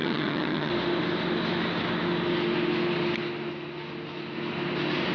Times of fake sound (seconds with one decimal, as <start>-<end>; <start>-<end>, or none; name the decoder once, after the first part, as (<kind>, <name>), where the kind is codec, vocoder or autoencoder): 0.0-0.7 (vocoder, HiFi-GAN)